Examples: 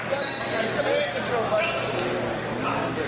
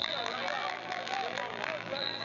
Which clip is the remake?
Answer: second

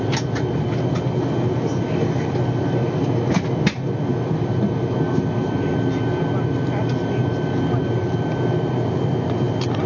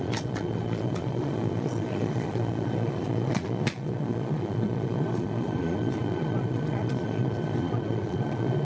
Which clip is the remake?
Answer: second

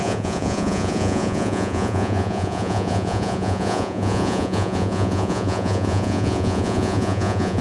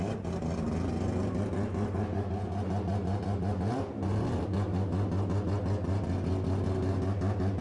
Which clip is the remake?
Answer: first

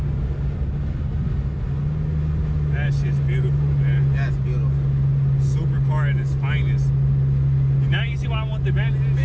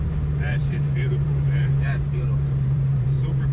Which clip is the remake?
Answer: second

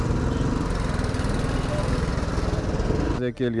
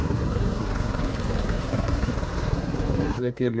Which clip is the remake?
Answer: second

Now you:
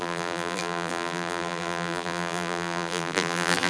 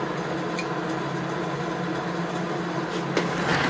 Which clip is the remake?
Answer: first